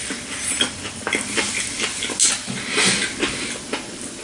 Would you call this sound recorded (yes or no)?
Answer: yes